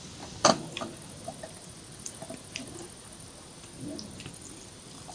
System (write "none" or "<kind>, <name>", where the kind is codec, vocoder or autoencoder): vocoder, BigVGAN v2